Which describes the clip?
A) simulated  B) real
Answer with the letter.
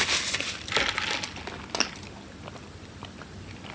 B